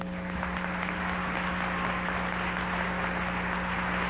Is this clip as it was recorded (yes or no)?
yes